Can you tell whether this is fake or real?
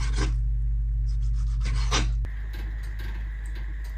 real